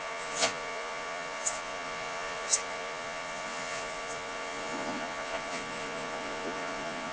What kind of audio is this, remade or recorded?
remade